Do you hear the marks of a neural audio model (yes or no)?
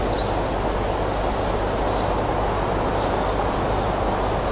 no